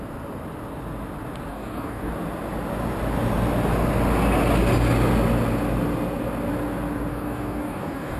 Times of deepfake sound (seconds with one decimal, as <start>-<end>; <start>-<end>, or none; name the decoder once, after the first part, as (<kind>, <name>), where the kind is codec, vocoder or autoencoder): 1.5-2.1 (codec, DAC); 7.1-8.2